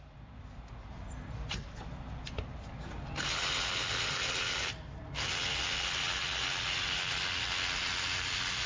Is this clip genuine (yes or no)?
yes